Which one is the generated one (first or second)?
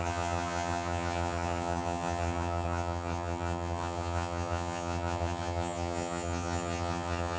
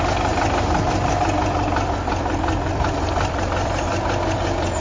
first